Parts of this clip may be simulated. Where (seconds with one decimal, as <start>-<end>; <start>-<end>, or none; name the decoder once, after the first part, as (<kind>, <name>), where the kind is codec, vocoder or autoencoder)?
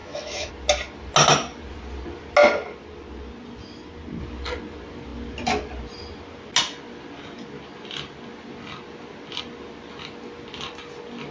0.0-0.5 (autoencoder, DAC-VAE)